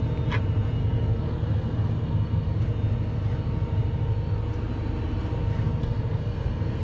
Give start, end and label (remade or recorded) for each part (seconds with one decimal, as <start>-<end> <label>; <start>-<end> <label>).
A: 0.0-0.8 recorded; 0.8-2.6 remade; 2.6-5.8 recorded; 5.8-6.8 remade